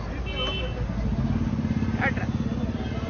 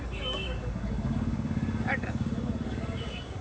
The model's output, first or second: second